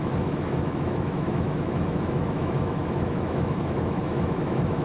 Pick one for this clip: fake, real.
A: fake